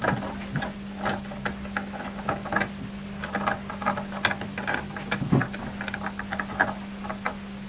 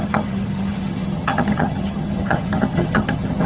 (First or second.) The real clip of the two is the first